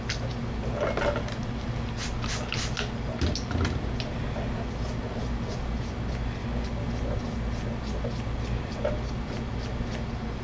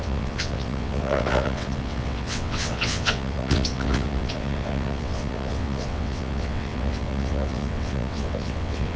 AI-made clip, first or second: second